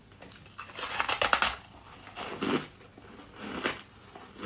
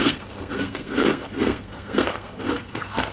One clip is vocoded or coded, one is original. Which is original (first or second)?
first